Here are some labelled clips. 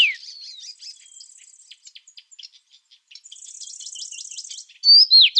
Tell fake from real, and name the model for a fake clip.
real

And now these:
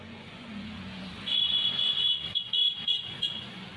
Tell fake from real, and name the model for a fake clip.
fake, vocoder, Vocos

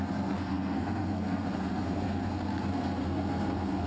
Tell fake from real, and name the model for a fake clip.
fake, codec, SNAC